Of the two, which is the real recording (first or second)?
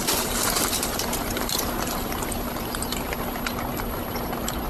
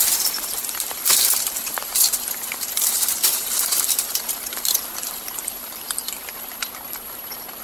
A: first